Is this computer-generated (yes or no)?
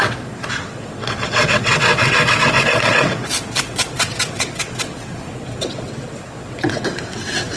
yes